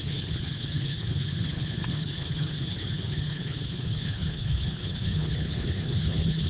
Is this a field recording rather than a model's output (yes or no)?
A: no